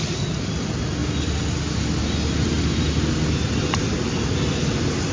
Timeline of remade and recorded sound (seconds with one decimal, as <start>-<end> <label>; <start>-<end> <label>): 0.0-5.1 recorded